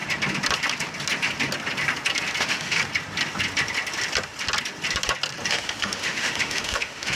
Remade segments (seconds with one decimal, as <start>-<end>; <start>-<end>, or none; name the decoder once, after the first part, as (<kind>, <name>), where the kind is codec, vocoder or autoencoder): 2.4-2.8 (autoencoder, DAC-VAE); 5.5-7.2